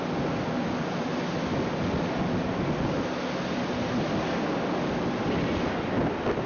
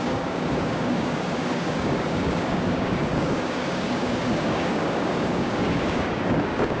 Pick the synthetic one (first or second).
second